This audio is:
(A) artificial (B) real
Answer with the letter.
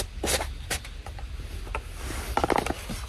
B